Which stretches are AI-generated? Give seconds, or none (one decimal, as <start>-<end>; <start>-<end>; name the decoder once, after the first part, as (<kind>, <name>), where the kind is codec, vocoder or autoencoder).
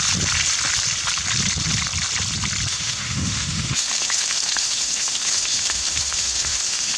2.7-7.0 (autoencoder, DAC-VAE)